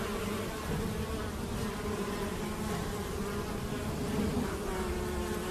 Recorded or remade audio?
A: recorded